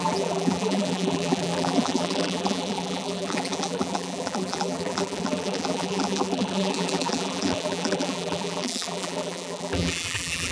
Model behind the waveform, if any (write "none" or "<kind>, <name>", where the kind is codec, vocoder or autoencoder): vocoder, BigVGAN v2